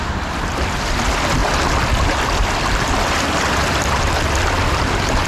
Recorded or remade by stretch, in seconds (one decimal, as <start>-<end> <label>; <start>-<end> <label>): 0.0-5.3 recorded